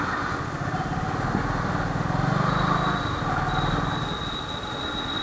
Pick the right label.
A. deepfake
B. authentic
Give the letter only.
B